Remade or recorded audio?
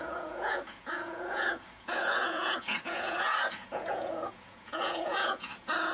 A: remade